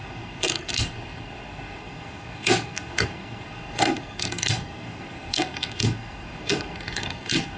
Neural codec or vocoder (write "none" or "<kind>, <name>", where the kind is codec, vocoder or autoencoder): codec, SNAC